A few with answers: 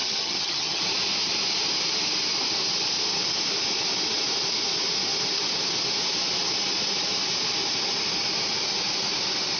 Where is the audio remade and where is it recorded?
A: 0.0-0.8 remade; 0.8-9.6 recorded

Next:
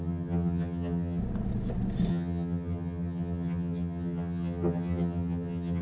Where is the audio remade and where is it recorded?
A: 0.0-1.2 remade; 1.2-2.1 recorded; 2.1-5.8 remade

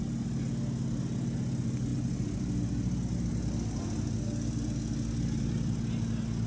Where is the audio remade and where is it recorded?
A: 0.0-6.5 recorded